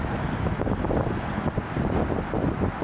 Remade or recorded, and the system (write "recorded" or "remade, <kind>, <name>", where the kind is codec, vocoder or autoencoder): recorded